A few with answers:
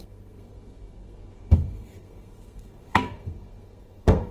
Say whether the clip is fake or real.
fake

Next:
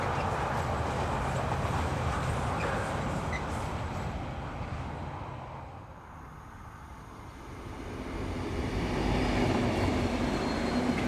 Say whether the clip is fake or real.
real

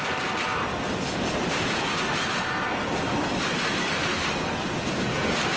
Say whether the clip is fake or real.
real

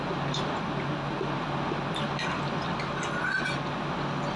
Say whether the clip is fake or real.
real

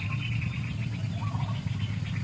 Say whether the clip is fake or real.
real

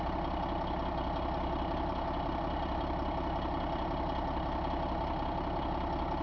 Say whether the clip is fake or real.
real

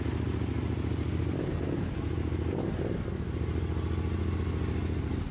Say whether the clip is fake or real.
real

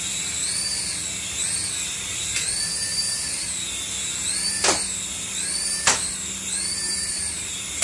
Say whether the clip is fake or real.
real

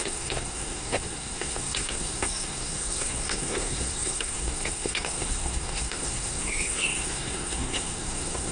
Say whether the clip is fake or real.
fake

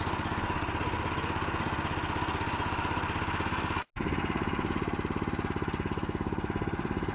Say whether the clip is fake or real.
real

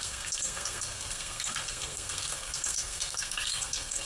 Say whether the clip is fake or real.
fake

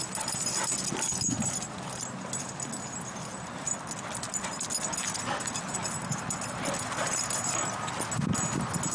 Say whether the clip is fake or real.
real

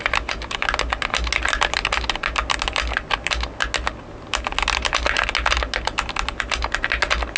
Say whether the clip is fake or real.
real